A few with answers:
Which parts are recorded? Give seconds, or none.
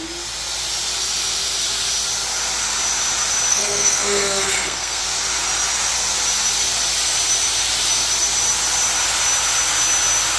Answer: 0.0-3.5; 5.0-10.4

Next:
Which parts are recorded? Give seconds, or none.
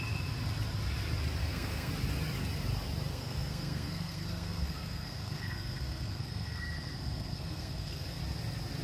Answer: 0.0-1.4; 1.9-3.1; 8.2-8.8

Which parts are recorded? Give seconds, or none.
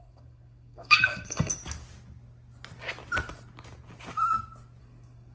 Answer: 1.6-4.8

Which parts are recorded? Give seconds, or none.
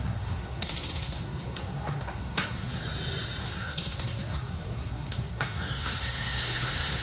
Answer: 2.8-3.4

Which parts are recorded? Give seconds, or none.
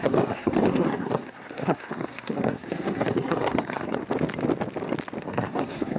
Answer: 4.0-5.2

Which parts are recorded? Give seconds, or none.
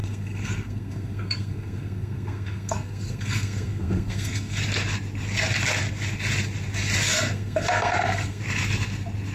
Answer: 4.6-7.1; 8.4-9.3